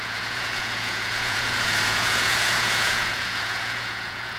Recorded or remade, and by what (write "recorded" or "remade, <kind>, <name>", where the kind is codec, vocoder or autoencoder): remade, vocoder, Vocos